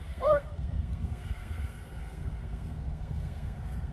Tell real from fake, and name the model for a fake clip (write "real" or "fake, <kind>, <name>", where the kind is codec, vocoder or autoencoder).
fake, codec, SNAC